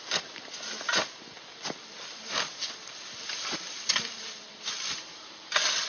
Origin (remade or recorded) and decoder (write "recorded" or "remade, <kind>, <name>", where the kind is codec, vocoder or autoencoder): recorded